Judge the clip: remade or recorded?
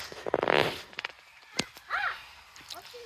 recorded